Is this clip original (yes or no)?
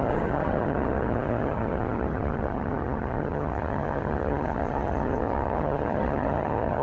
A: no